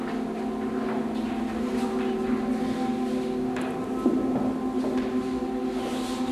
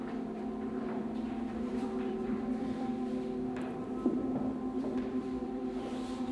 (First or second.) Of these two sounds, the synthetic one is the second